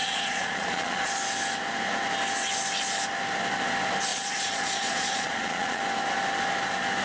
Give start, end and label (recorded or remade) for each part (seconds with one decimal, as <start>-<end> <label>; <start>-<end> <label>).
0.0-1.1 remade; 1.1-4.1 recorded; 4.1-5.8 remade; 5.8-7.0 recorded